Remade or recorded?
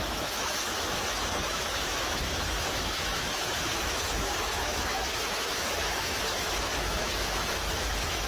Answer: remade